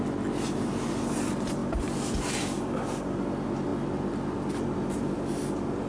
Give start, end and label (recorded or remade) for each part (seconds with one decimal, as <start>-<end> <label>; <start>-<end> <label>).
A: 0.0-5.9 recorded